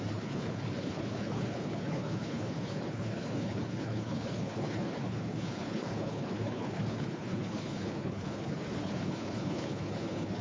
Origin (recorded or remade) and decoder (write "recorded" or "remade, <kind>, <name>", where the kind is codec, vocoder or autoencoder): remade, codec, HILCodec